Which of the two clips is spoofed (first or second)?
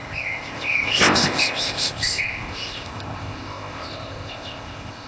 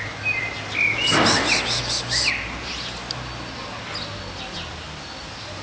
first